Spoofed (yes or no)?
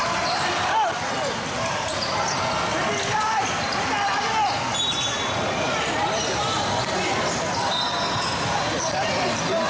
no